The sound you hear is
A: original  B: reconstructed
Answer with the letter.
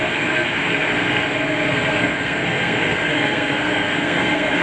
B